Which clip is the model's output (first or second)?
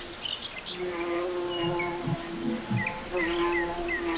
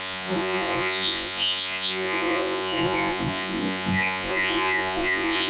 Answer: second